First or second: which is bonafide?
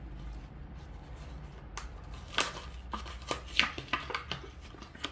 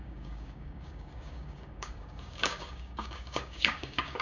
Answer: first